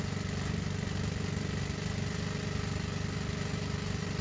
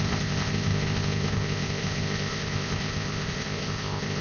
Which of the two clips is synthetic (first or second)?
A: second